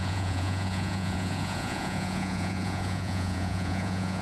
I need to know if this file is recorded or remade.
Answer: remade